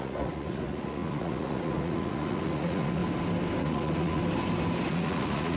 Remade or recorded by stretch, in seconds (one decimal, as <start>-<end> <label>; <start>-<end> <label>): 0.0-3.0 remade; 3.0-3.6 recorded; 3.6-4.2 remade; 4.2-4.8 recorded; 4.8-5.6 remade